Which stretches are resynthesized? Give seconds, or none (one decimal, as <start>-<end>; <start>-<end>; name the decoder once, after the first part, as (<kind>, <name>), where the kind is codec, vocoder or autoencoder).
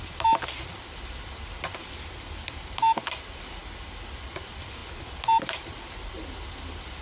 none